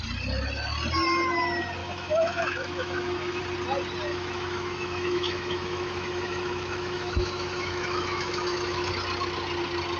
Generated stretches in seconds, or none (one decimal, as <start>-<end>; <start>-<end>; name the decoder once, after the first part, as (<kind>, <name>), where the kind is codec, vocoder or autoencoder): 1.8-3.4 (autoencoder, DAC-VAE); 4.1-8.9